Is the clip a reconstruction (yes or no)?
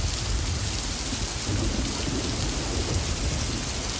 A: no